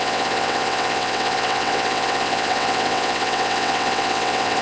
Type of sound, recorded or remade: remade